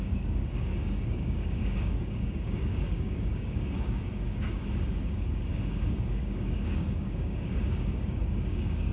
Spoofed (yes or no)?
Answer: yes